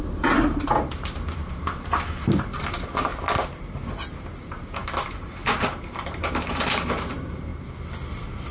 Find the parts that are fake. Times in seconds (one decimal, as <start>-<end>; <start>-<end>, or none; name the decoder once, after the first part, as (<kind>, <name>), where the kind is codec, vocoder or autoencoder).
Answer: 0.0-3.1 (vocoder, BigVGAN v2); 3.6-7.5; 8.1-8.5